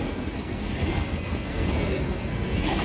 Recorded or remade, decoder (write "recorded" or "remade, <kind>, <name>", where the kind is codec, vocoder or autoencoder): remade, codec, SNAC